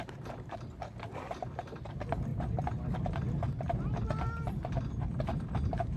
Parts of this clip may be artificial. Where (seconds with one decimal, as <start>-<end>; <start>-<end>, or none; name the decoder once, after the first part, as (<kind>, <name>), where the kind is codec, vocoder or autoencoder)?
0.0-6.0 (vocoder, BigVGAN v2)